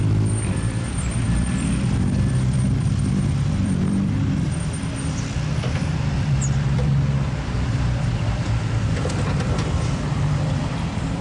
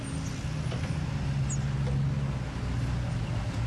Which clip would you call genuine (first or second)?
second